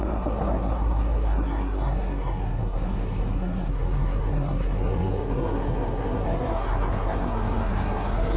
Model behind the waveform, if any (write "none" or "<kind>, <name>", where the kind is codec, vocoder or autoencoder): codec, SNAC